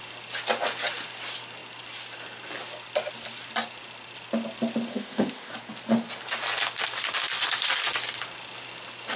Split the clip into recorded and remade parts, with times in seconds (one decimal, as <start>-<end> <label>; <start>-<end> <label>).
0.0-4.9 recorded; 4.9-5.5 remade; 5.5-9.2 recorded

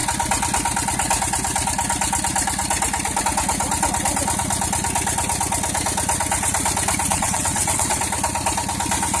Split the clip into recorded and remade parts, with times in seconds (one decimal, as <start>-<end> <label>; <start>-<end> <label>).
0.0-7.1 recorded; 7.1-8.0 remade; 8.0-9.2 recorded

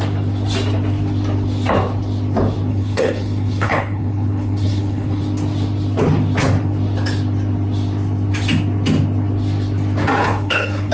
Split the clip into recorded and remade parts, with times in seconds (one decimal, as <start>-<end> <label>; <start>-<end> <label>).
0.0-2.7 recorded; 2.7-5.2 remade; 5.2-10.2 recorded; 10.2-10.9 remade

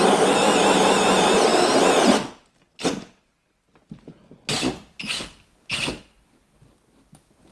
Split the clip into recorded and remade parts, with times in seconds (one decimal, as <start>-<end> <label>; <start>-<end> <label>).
0.0-7.5 recorded